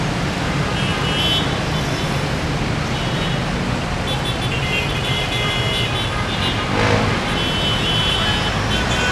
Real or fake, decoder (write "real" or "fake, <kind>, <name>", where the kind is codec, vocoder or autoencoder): real